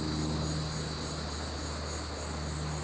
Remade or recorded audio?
recorded